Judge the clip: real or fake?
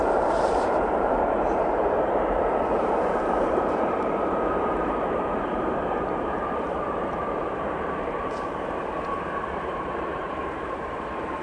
fake